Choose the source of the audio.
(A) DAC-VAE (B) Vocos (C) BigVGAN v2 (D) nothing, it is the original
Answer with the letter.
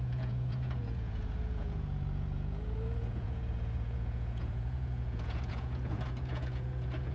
B